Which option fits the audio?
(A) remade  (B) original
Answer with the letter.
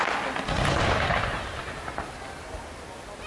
B